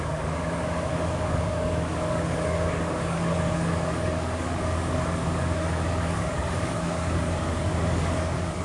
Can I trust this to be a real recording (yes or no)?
no